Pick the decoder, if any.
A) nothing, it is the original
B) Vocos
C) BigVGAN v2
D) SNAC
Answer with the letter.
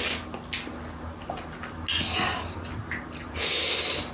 A